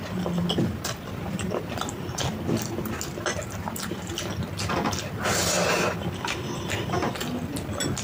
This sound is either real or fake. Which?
real